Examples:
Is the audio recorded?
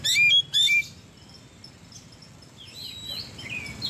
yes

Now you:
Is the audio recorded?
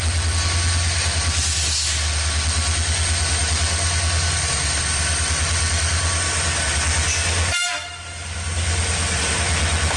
yes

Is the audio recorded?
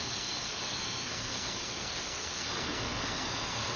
no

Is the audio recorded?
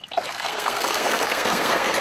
no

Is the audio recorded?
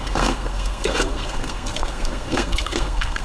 no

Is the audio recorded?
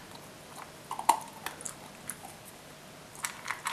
yes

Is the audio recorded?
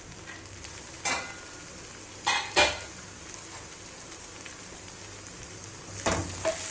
yes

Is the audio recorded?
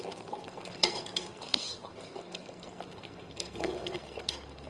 no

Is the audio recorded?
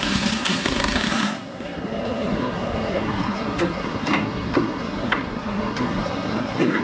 no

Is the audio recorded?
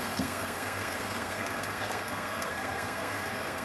no